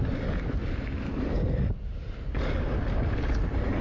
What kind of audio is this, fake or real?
real